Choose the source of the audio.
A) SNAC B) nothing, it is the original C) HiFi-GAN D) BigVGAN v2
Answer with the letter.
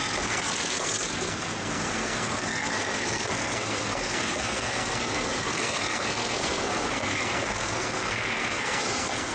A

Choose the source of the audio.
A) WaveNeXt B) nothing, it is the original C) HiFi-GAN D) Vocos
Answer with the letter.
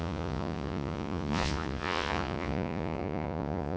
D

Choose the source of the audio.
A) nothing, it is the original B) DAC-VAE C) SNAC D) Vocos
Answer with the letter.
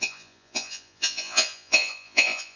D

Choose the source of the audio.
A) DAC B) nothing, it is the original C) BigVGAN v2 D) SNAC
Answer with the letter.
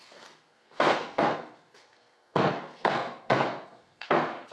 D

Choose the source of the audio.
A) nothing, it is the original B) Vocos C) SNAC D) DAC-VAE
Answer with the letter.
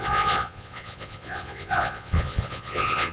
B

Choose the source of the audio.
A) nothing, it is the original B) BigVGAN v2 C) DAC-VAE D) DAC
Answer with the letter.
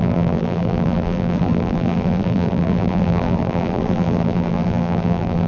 B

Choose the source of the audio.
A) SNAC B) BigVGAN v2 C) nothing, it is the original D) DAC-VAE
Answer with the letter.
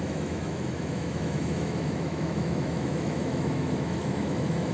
D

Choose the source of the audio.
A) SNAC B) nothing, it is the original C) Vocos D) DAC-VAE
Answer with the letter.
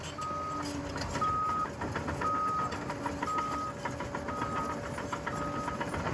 B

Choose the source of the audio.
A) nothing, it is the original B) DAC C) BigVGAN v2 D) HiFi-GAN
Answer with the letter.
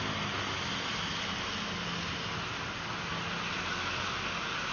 A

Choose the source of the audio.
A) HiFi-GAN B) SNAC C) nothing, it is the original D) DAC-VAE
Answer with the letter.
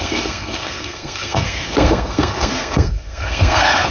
B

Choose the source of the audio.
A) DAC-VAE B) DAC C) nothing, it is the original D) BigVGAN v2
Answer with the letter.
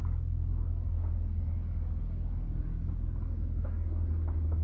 B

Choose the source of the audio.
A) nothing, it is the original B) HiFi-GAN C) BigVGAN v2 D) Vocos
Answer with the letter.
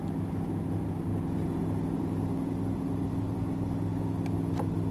C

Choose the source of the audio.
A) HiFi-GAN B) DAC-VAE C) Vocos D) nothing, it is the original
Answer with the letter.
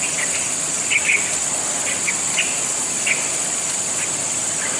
D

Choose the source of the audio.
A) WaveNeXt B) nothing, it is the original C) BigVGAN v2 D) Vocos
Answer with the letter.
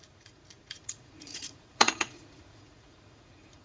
D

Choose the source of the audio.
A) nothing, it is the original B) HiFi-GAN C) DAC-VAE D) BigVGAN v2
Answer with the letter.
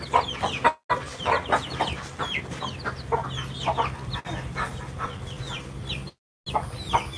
A